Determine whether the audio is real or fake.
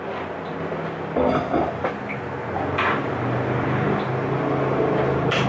real